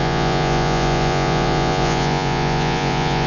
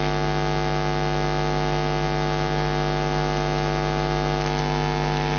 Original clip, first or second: second